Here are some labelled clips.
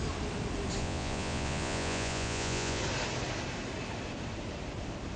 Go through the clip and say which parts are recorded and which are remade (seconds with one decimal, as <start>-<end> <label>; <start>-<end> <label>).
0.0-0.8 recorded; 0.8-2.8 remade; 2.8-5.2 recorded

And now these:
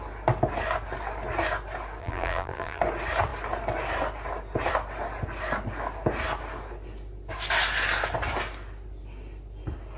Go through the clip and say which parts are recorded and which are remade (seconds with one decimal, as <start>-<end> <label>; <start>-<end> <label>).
0.0-2.0 recorded; 2.0-2.8 remade; 2.8-10.0 recorded

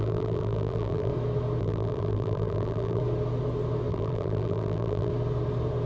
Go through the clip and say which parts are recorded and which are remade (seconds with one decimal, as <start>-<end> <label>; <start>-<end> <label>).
0.0-1.1 remade; 1.1-1.6 recorded; 1.6-3.0 remade; 3.0-3.9 recorded; 3.9-5.1 remade; 5.1-5.9 recorded

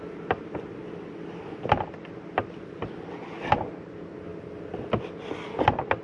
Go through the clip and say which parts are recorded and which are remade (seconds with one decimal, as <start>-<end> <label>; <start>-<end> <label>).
0.0-6.0 recorded

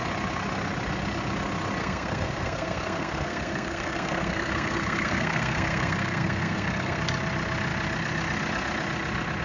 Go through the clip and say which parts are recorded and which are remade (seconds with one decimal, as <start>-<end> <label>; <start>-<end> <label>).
0.0-1.8 recorded; 1.8-7.0 remade; 7.0-9.4 recorded

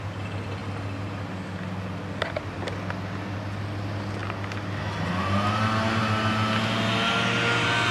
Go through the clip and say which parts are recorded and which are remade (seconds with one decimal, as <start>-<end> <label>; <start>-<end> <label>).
0.0-7.9 recorded

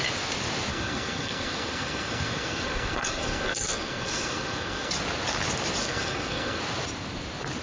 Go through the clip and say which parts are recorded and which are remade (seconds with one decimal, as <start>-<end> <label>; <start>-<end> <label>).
0.0-0.7 recorded; 0.7-4.9 remade; 4.9-5.8 recorded; 5.8-6.6 remade; 6.6-7.6 recorded

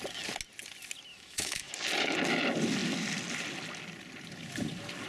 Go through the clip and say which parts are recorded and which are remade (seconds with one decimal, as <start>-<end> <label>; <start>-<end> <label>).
0.0-1.1 recorded; 1.1-1.7 remade; 1.7-5.1 recorded